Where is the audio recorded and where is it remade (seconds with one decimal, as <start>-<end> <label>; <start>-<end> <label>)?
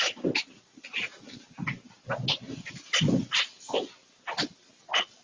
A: 0.0-5.2 recorded